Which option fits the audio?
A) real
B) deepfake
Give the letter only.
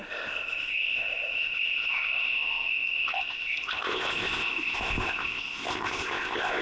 B